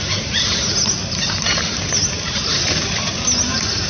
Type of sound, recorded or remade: recorded